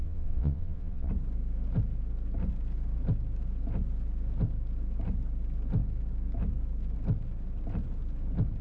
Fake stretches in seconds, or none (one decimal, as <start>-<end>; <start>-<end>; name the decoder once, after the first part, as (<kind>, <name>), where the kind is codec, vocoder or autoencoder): 0.0-1.1 (vocoder, Vocos)